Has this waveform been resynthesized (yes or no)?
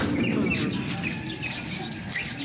no